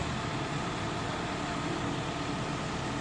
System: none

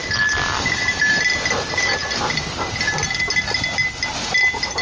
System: none